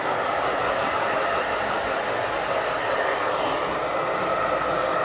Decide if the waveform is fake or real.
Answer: real